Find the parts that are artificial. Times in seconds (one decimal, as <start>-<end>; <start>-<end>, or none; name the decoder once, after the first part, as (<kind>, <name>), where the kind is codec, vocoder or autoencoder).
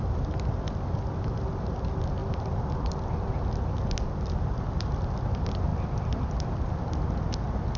none